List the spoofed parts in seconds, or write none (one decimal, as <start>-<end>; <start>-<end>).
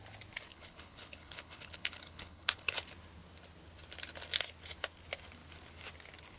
0.5-2.7